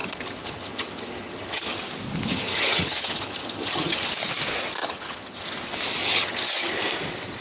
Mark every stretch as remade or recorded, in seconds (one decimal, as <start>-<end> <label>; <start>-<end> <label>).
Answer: 0.0-1.8 remade; 1.8-2.3 recorded; 2.3-4.1 remade; 4.1-4.8 recorded; 4.8-5.4 remade; 5.4-6.0 recorded; 6.0-6.7 remade; 6.7-7.4 recorded